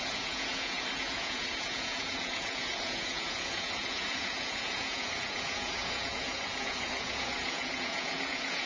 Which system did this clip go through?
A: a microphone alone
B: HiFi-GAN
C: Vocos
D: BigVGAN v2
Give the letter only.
C